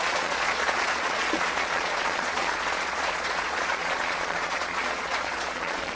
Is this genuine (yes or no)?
no